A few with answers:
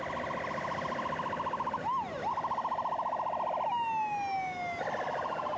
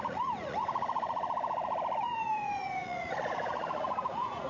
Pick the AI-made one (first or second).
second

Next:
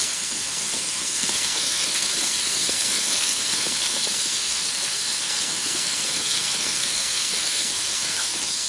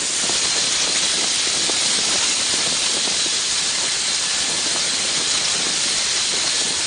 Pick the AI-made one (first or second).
first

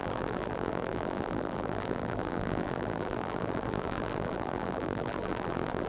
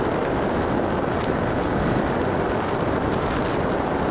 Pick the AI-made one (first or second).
first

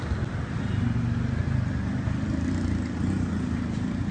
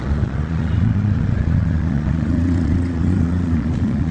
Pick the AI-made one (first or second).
second